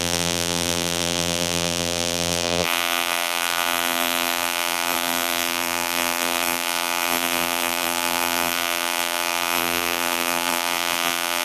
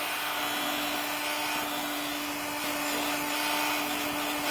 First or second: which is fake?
first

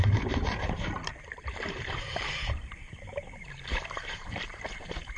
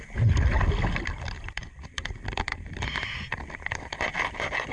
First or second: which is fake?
first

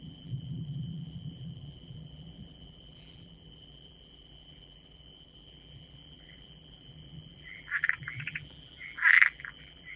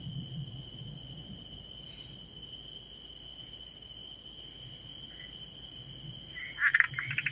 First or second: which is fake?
first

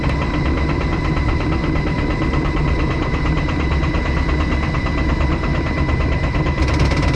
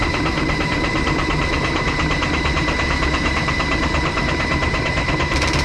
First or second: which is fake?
second